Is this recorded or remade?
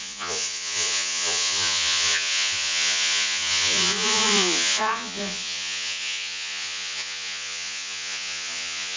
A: remade